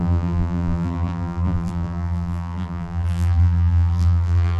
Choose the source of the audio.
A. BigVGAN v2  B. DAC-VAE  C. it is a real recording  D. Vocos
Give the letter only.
A